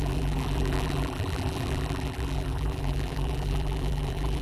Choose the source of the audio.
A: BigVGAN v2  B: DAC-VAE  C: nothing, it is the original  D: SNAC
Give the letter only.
A